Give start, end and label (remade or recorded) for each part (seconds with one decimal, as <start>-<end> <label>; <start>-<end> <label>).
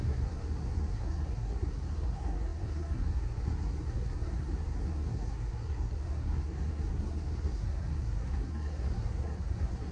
0.0-9.9 remade